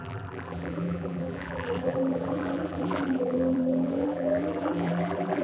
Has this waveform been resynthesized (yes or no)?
yes